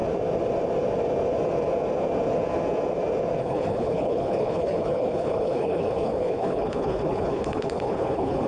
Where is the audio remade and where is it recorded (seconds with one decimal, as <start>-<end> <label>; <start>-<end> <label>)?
0.0-3.4 recorded; 3.4-8.5 remade